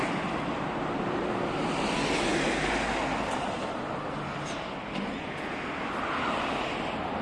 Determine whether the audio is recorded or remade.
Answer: recorded